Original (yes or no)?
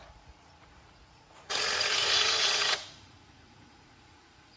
no